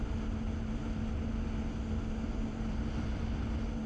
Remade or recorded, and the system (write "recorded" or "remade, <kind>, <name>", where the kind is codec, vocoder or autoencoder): recorded